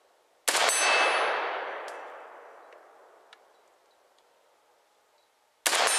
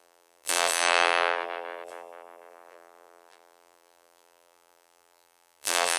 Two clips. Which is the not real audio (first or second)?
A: second